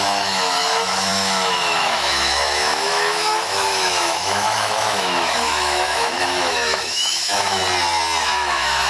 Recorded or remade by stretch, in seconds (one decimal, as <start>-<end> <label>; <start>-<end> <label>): 0.0-7.6 remade; 7.6-8.2 recorded; 8.2-8.9 remade